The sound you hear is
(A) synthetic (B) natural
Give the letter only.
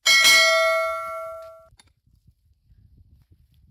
B